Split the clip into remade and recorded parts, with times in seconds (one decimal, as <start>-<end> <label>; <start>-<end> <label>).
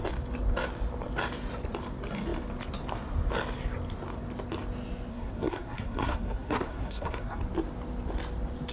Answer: 0.0-5.1 recorded; 5.1-7.4 remade; 7.4-8.7 recorded